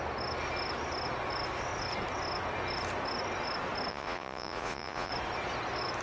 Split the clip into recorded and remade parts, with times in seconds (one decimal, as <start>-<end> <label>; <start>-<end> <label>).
0.0-3.9 recorded; 3.9-5.1 remade; 5.1-6.0 recorded